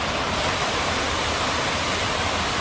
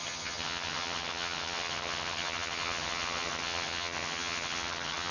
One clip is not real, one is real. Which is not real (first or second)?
second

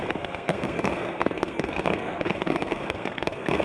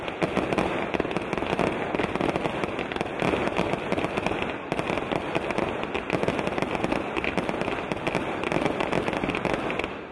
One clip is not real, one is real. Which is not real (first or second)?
first